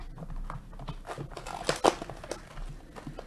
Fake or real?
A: real